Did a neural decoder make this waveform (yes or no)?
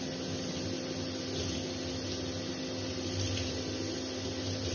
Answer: no